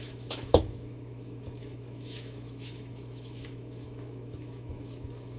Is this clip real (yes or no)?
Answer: no